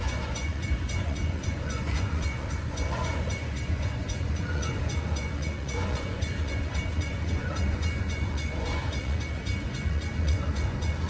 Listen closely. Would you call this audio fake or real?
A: fake